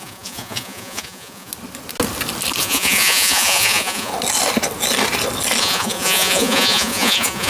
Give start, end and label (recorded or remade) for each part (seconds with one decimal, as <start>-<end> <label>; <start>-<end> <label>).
0.0-1.5 remade; 1.5-2.6 recorded; 2.6-4.1 remade; 4.1-5.6 recorded; 5.6-7.5 remade

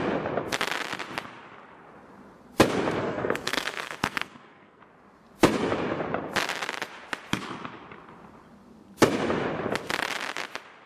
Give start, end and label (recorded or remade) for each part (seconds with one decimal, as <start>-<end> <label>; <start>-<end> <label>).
0.0-3.0 recorded; 3.0-4.8 remade; 4.8-10.9 recorded

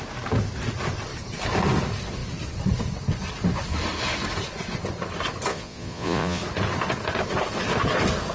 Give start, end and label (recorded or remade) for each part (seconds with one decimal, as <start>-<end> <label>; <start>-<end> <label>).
0.0-5.5 recorded; 5.5-6.4 remade; 6.4-8.3 recorded

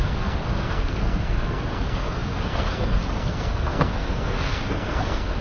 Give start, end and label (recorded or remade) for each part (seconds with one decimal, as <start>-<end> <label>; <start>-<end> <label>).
0.0-5.4 remade

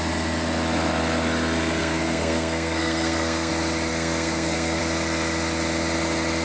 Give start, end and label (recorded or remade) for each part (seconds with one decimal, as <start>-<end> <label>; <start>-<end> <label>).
0.0-1.8 recorded; 1.8-3.5 remade; 3.5-3.9 recorded; 3.9-4.8 remade; 4.8-6.4 recorded

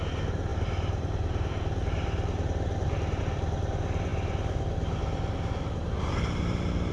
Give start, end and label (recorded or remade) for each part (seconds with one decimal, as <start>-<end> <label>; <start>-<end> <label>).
0.0-0.5 recorded; 0.5-3.2 remade; 3.2-6.9 recorded